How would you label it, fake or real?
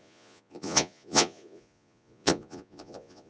fake